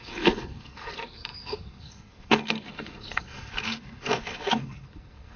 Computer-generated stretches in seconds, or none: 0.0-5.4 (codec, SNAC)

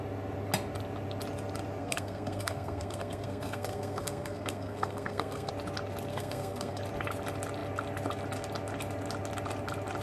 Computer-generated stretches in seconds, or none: 1.8-5.5 (codec, SNAC); 6.1-6.8

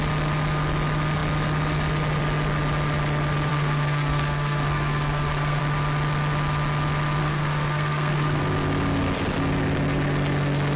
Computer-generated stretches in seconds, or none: 3.5-5.6 (codec, SNAC); 7.2-8.4

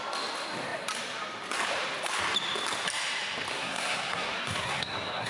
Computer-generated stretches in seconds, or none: 3.5-5.3 (codec, SNAC)

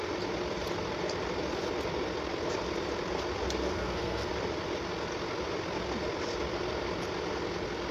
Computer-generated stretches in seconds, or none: 3.6-4.3 (codec, SNAC)

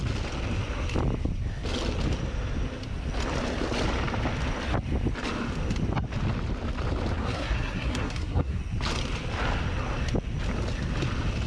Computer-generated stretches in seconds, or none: 7.2-8.6 (codec, SNAC)